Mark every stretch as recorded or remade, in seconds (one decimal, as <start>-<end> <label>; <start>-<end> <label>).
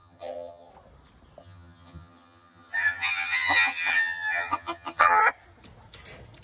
0.0-0.7 remade; 0.7-1.4 recorded; 1.4-5.2 remade; 5.2-6.4 recorded